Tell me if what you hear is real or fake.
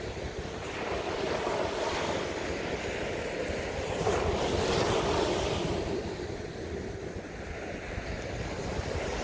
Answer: real